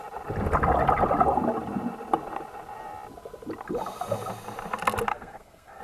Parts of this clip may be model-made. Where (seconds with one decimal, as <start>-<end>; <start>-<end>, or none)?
5.1-5.8